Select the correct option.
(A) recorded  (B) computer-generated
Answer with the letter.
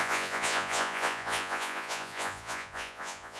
B